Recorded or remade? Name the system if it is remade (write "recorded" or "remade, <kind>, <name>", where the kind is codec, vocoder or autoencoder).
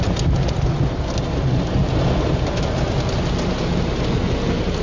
recorded